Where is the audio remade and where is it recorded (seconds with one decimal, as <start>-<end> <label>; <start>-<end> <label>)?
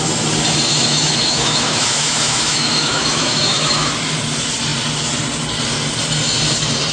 0.0-0.7 recorded; 0.7-3.9 remade; 3.9-6.9 recorded